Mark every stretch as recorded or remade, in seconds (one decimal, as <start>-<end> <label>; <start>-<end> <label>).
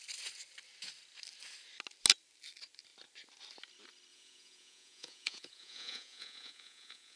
0.0-4.1 recorded; 4.1-7.2 remade